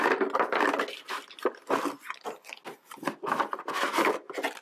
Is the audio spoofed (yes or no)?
no